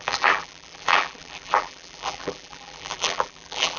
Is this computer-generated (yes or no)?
yes